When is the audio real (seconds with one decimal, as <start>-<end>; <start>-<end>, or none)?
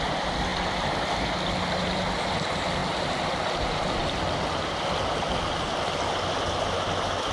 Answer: 0.0-7.3